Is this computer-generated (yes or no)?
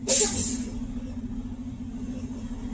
no